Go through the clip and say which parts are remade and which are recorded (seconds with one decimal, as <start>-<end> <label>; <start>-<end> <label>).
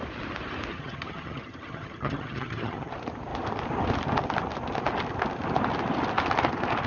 0.0-0.7 recorded; 0.7-2.9 remade; 2.9-6.9 recorded